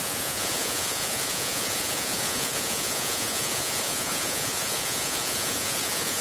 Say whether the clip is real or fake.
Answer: fake